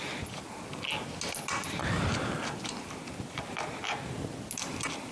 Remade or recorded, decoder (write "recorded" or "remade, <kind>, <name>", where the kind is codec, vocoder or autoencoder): recorded